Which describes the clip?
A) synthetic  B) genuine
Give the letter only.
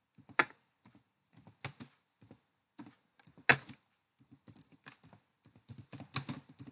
B